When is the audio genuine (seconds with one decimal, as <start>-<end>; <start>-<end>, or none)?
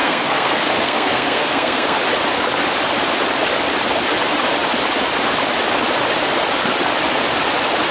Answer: 2.0-7.9